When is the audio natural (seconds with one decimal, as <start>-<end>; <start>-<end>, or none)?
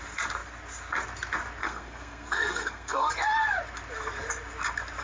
0.0-1.6; 3.1-5.0